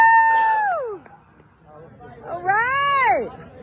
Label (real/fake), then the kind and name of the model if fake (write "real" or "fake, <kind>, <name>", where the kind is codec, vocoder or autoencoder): real